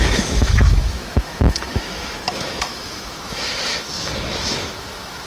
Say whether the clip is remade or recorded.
remade